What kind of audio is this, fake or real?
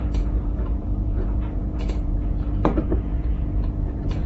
fake